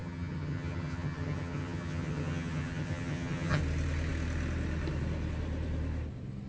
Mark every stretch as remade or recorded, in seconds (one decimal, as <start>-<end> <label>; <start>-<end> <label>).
0.0-3.6 remade; 3.6-6.5 recorded